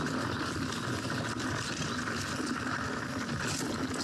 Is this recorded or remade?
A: recorded